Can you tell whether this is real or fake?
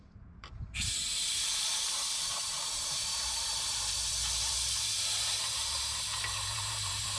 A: fake